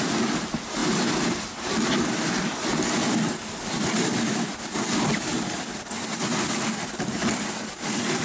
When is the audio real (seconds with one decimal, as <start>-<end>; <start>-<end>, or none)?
0.0-8.2